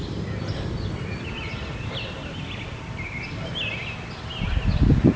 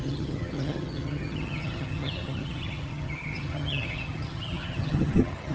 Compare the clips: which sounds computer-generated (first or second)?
second